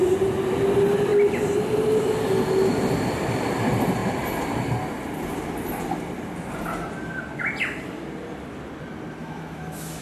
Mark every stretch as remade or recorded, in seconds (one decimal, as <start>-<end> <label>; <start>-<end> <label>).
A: 0.0-9.2 recorded; 9.2-10.0 remade